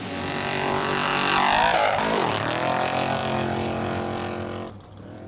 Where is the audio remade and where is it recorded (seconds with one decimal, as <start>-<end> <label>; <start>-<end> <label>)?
0.0-1.1 remade; 1.1-2.0 recorded; 2.0-3.2 remade; 3.2-4.7 recorded; 4.7-5.3 remade